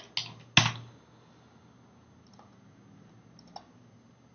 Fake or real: real